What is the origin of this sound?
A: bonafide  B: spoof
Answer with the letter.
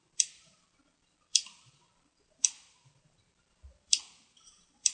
B